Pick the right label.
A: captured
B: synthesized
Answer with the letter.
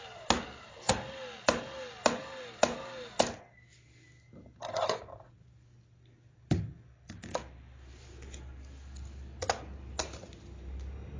A